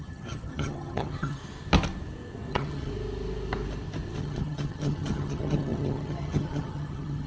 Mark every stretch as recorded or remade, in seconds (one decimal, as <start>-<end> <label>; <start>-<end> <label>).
0.0-1.4 remade; 1.4-2.5 recorded; 2.5-2.9 remade; 2.9-4.2 recorded; 4.2-7.3 remade